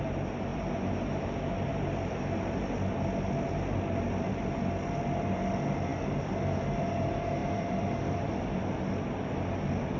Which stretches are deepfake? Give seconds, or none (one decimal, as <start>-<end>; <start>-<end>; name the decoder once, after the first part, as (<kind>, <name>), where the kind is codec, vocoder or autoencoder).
7.4-8.9 (vocoder, BigVGAN v2)